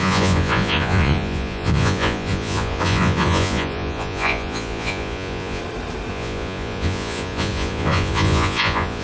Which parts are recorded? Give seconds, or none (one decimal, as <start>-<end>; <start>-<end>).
5.6-6.1